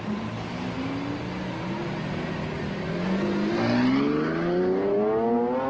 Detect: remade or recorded recorded